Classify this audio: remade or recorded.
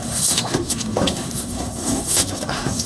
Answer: remade